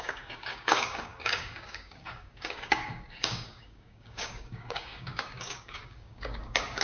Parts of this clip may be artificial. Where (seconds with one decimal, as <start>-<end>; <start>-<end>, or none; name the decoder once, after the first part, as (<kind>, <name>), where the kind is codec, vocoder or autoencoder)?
0.0-6.8 (codec, DAC)